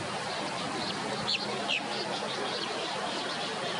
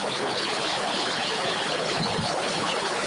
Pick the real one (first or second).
first